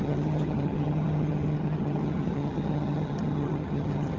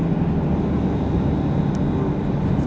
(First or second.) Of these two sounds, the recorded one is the second